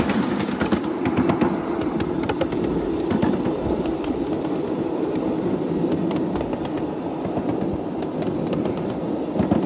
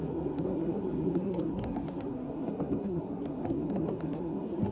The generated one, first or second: second